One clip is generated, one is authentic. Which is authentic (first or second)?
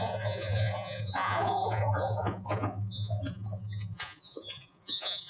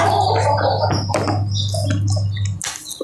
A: second